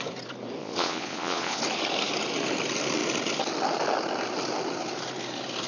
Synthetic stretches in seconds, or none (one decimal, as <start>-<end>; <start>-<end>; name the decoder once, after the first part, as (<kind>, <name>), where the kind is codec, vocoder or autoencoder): 0.6-1.6 (vocoder, Vocos)